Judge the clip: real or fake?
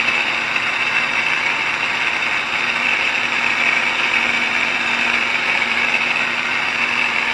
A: fake